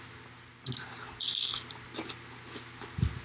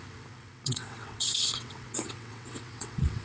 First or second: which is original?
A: first